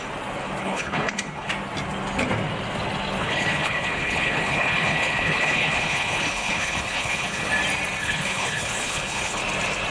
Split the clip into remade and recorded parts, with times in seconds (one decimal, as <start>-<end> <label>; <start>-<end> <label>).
0.0-0.6 recorded; 0.6-1.5 remade; 1.5-3.2 recorded; 3.2-7.5 remade; 7.5-8.0 recorded; 8.0-9.4 remade; 9.4-9.9 recorded